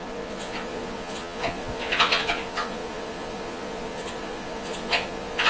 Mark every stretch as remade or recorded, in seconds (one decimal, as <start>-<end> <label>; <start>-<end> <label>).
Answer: 0.0-5.5 remade